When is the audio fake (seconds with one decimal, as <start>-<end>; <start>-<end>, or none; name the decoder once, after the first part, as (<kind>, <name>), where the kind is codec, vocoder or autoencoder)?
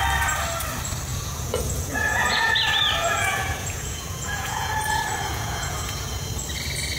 1.1-2.6 (vocoder, Vocos); 3.0-4.7; 5.3-6.3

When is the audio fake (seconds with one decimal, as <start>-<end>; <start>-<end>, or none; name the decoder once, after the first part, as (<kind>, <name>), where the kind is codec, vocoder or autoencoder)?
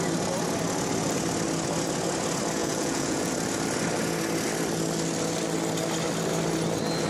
2.6-3.3 (vocoder, Vocos)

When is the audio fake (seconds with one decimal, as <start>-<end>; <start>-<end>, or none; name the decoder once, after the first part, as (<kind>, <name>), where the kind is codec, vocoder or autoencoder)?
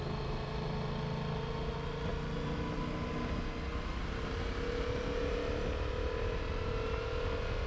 none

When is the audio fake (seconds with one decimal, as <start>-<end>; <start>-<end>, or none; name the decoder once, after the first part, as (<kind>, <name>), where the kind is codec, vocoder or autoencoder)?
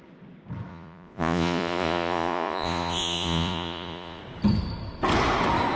0.7-4.2 (vocoder, Vocos)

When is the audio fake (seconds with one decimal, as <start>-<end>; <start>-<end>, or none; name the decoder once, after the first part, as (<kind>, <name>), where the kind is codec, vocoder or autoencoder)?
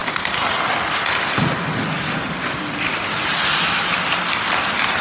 none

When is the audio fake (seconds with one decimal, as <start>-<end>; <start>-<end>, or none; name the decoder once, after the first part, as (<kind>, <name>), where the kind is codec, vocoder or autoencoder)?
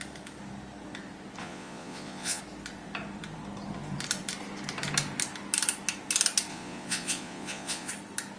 1.4-2.4 (vocoder, Vocos); 6.5-7.9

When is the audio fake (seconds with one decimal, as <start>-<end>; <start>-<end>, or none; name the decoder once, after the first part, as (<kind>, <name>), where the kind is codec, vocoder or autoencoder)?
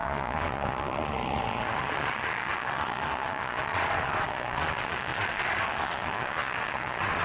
0.0-7.2 (vocoder, Vocos)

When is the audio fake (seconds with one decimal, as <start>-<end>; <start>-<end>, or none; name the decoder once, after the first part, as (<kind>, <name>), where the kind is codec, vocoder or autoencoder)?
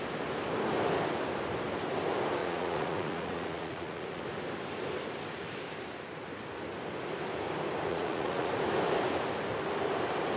2.4-4.2 (vocoder, Vocos); 7.9-8.5